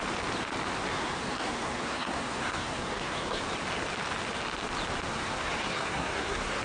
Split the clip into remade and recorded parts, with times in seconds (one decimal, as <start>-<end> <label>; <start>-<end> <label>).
0.0-0.9 recorded; 0.9-3.4 remade; 3.4-5.1 recorded; 5.1-6.6 remade